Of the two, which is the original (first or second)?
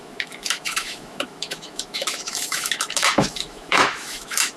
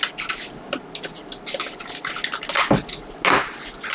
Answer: second